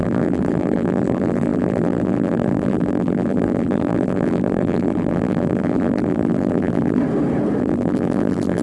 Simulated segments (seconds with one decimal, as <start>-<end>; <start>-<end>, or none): 0.0-7.0; 7.6-8.6

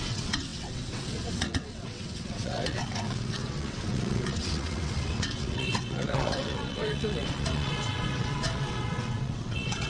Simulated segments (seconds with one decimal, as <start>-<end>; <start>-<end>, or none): 0.0-9.9